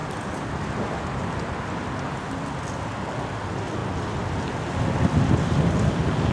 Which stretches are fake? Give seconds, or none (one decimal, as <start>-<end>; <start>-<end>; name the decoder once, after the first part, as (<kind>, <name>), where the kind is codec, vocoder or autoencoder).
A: none